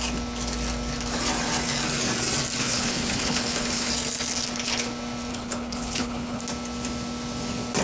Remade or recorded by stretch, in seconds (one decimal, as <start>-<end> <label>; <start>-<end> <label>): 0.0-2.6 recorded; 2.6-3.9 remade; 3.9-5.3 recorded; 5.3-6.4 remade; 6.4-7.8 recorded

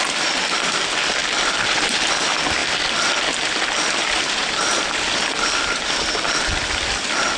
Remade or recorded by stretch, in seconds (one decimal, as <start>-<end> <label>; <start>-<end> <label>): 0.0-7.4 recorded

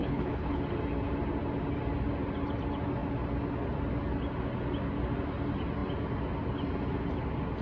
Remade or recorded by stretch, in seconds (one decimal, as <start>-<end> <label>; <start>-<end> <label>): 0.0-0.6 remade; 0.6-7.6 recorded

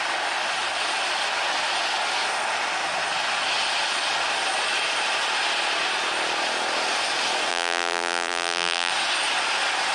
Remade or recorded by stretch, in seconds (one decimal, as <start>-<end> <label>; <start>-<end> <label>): 0.0-7.5 recorded; 7.5-8.9 remade; 8.9-9.9 recorded